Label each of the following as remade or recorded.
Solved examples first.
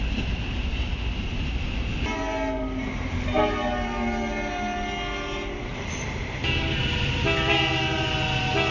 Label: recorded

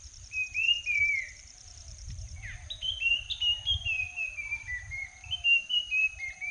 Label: remade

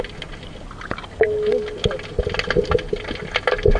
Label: recorded